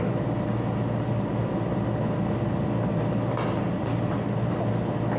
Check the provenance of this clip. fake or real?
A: real